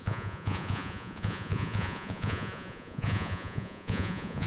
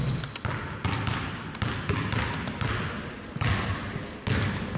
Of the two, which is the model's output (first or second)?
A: first